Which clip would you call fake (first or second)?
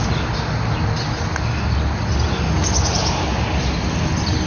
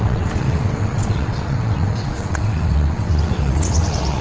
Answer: second